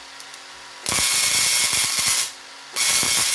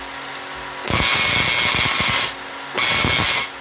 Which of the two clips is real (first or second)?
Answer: second